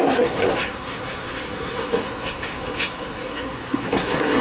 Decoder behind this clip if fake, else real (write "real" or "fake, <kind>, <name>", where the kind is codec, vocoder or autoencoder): fake, codec, SNAC